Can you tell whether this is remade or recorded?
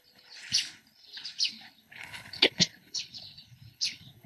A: remade